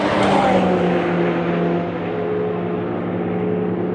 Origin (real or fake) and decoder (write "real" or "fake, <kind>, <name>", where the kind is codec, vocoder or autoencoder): real